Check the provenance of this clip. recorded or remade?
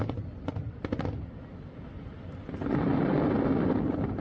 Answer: recorded